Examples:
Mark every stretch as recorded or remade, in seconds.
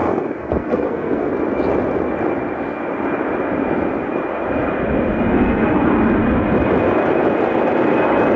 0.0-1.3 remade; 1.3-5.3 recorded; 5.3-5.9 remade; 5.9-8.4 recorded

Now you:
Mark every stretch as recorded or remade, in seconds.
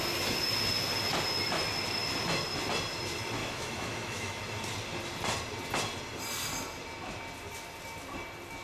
0.0-3.4 recorded; 3.4-4.4 remade; 4.4-8.6 recorded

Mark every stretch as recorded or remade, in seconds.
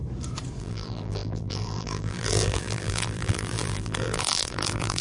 0.0-0.6 recorded; 0.6-5.0 remade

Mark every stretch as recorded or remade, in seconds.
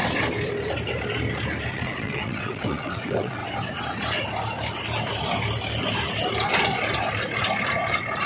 0.0-1.7 recorded; 1.7-3.4 remade; 3.4-8.3 recorded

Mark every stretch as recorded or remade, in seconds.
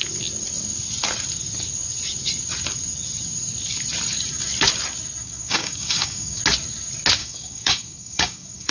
0.0-5.2 recorded; 5.2-6.4 remade; 6.4-7.2 recorded; 7.2-8.7 remade